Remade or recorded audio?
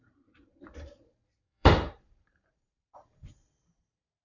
remade